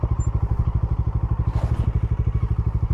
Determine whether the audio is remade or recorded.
recorded